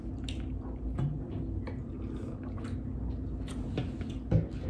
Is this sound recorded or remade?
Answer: recorded